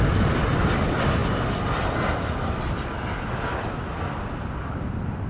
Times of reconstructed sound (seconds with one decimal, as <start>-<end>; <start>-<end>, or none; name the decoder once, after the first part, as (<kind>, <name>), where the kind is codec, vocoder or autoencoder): 0.0-1.2 (vocoder, BigVGAN v2); 4.4-5.3